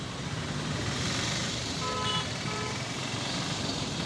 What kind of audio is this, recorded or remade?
remade